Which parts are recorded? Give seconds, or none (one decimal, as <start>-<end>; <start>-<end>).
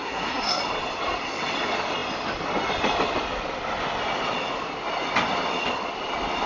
0.6-6.5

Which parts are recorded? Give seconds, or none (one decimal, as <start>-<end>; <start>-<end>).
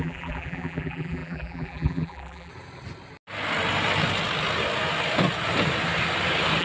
2.5-6.6